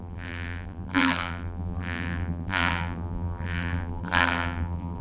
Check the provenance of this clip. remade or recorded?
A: remade